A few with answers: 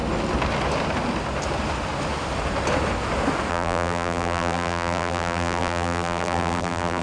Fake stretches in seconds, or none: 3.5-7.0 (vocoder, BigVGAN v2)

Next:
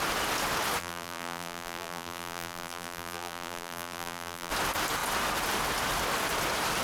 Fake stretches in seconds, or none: 0.8-4.5 (vocoder, BigVGAN v2)

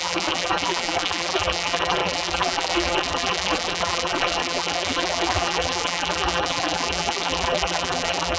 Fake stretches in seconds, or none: 0.0-8.4 (vocoder, BigVGAN v2)

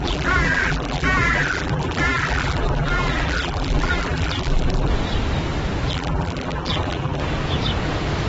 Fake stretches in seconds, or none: 0.0-4.9 (vocoder, BigVGAN v2); 5.9-7.2

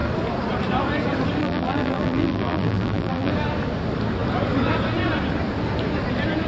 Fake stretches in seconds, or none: 1.4-3.3 (vocoder, BigVGAN v2)